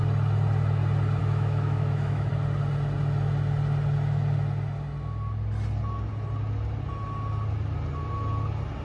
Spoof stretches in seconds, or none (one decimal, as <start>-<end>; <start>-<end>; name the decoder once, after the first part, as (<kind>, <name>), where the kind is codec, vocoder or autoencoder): 1.2-2.3 (autoencoder, DAC-VAE)